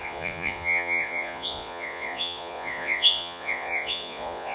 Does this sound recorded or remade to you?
remade